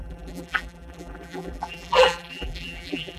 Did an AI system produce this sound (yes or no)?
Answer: yes